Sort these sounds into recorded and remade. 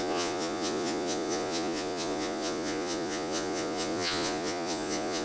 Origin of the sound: remade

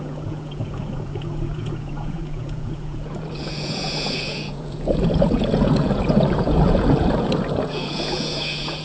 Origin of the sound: remade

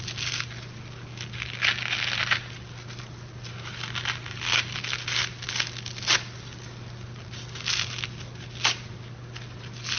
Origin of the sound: recorded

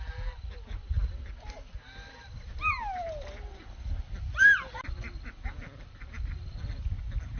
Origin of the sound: recorded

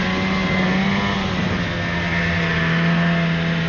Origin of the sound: recorded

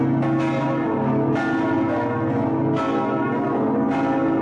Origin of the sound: recorded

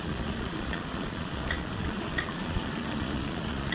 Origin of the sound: remade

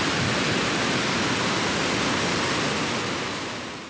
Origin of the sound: recorded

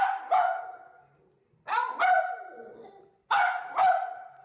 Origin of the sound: recorded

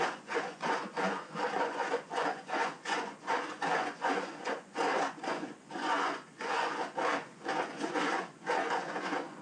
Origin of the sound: remade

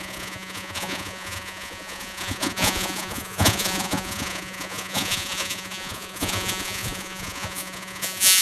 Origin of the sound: remade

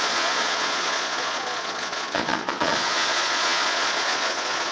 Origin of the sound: remade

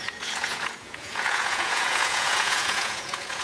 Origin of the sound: remade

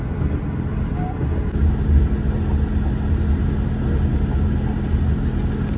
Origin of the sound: recorded